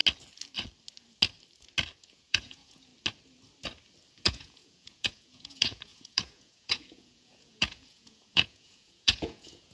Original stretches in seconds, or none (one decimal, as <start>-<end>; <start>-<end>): 0.0-2.0; 2.9-4.1